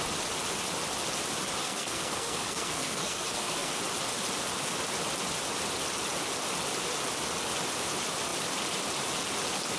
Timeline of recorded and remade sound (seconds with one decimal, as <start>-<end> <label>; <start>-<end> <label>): 0.0-1.6 recorded; 1.6-3.8 remade; 3.8-9.8 recorded